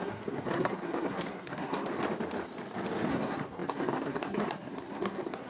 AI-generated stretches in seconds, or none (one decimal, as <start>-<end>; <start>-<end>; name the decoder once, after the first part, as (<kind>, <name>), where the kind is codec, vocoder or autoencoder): 0.0-1.9 (codec, SNAC); 3.1-5.5